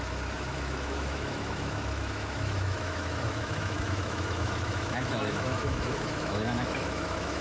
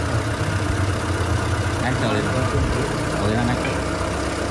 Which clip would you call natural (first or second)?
second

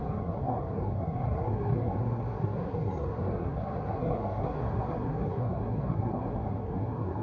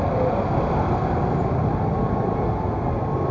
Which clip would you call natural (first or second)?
second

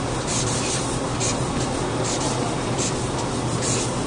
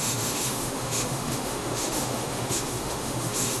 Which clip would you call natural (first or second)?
first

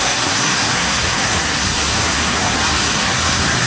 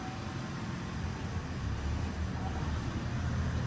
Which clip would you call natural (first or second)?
second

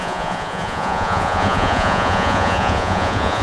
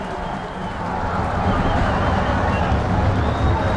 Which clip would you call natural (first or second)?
second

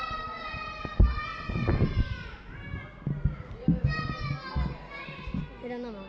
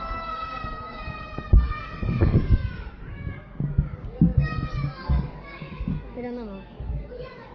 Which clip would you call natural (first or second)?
first